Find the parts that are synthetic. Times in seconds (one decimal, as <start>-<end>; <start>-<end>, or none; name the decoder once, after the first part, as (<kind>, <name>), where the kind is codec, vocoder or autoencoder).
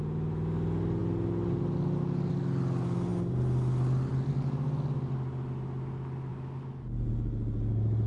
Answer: none